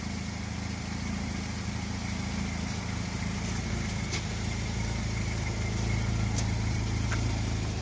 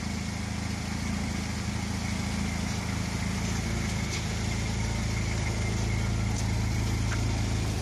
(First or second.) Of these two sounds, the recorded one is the second